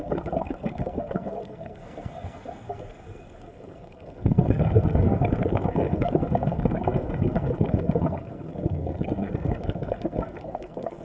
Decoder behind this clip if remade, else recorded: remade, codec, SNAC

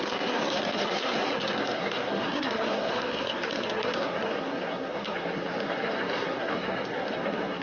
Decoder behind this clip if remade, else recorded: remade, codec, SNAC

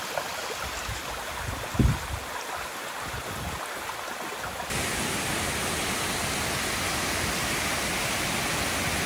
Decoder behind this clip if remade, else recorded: recorded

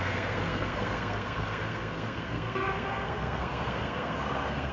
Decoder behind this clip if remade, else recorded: remade, codec, SNAC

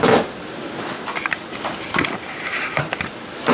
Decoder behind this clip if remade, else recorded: recorded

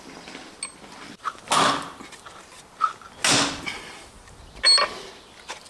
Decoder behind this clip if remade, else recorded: recorded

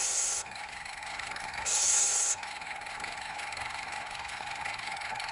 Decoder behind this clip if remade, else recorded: remade, codec, SNAC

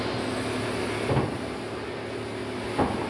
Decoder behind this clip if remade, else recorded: recorded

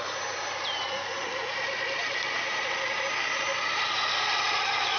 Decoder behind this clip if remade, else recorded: recorded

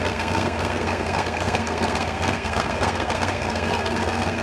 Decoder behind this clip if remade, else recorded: remade, codec, SNAC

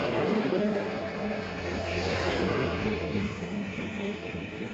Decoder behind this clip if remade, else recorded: remade, codec, SNAC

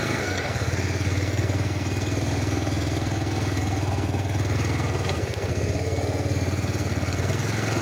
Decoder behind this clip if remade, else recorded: remade, codec, SNAC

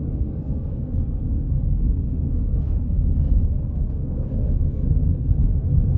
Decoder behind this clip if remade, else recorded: remade, codec, SNAC